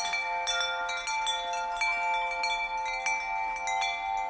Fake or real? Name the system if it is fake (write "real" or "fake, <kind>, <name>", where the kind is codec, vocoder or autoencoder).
real